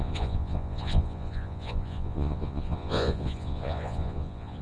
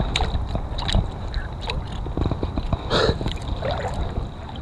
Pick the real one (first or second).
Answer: second